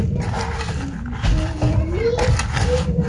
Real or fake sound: real